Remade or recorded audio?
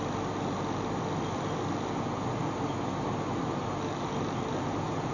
recorded